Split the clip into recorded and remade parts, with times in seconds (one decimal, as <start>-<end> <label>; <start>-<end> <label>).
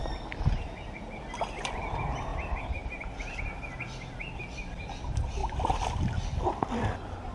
0.0-7.3 recorded